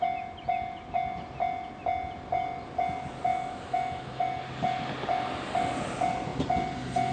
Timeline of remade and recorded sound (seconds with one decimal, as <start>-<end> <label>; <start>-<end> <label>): 0.0-3.3 recorded; 3.3-4.4 remade; 4.4-7.1 recorded